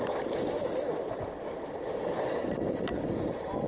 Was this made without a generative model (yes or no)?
yes